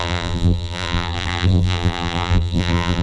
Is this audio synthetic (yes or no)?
yes